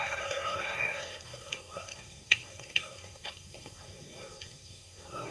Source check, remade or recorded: remade